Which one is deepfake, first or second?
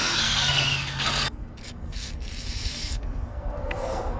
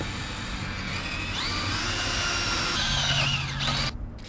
first